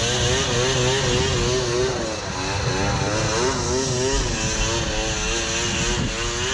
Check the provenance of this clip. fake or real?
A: real